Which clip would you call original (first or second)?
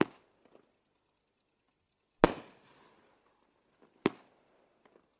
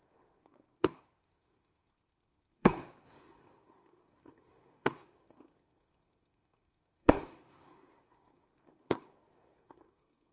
first